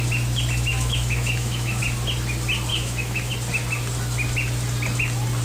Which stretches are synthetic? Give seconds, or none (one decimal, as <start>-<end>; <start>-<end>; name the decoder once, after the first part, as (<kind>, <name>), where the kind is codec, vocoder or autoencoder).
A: 0.7-1.8 (autoencoder, DAC-VAE); 2.7-3.3